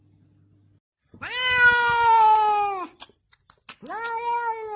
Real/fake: real